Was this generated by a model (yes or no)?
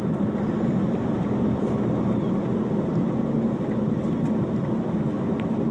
no